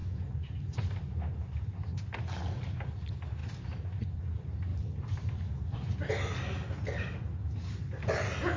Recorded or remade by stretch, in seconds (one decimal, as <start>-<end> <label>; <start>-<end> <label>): 0.0-2.0 remade; 2.0-3.4 recorded; 3.4-4.2 remade; 4.2-4.7 recorded; 4.7-6.1 remade; 6.1-8.6 recorded